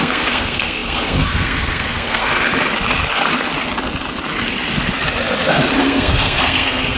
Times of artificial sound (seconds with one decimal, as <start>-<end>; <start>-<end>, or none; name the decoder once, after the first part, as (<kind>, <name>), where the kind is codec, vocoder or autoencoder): 0.0-2.3 (codec, SNAC); 5.8-7.0